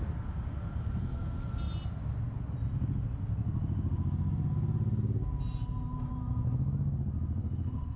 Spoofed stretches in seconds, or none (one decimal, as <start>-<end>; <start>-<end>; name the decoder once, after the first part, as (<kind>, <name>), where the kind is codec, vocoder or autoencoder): 7.4-8.0 (codec, HILCodec)